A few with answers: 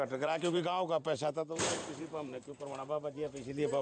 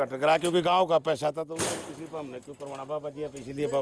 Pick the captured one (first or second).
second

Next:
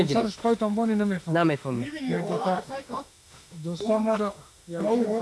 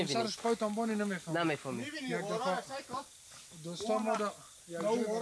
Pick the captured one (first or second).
second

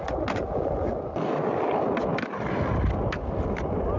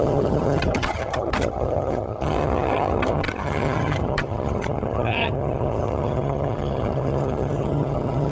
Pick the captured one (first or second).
first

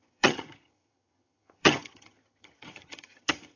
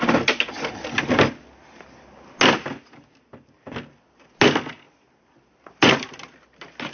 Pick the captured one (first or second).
second